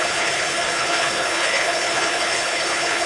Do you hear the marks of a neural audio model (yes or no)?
yes